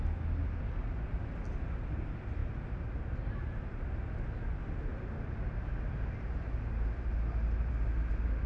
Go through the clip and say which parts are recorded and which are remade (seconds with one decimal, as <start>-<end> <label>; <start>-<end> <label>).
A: 0.0-2.4 recorded; 2.4-3.8 remade; 3.8-8.5 recorded